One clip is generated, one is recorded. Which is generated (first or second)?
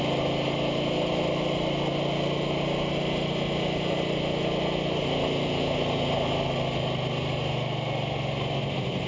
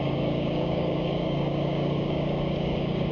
second